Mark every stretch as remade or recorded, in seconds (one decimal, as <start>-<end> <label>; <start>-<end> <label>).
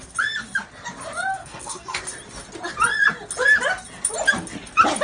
0.0-1.3 recorded; 1.3-2.0 remade; 2.0-5.0 recorded